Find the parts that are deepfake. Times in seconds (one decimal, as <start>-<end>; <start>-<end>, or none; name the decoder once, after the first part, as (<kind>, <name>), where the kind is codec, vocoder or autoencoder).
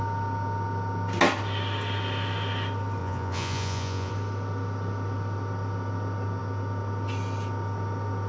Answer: 3.0-4.1 (vocoder, Vocos)